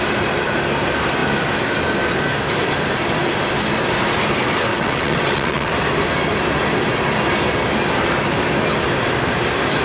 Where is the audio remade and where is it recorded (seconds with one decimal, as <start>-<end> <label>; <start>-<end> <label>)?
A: 0.0-4.7 recorded; 4.7-5.7 remade; 5.7-9.8 recorded